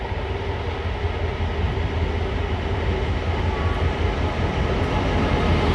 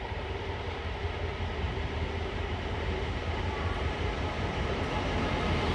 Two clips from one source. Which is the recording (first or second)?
first